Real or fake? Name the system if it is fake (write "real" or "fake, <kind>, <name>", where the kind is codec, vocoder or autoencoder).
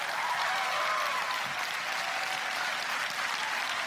fake, vocoder, BigVGAN v2